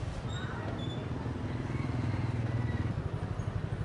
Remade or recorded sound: recorded